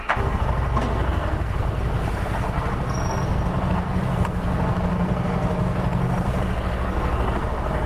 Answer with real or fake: fake